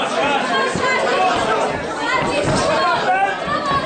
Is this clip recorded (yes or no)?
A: yes